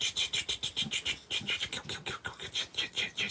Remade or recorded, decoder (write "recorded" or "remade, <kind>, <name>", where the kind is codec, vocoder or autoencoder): recorded